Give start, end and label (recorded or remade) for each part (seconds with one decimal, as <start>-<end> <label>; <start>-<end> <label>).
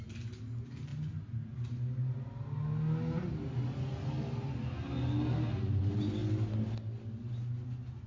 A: 0.0-8.1 recorded